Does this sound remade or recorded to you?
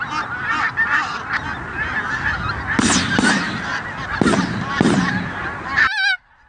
recorded